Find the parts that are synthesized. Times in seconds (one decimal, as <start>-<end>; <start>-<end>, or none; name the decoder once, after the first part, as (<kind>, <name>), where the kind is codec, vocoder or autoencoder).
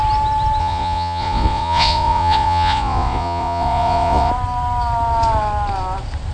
0.6-4.3 (vocoder, Vocos)